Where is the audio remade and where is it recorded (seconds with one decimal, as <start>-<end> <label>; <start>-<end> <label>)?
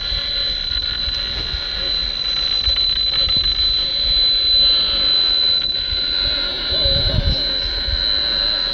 0.0-8.7 recorded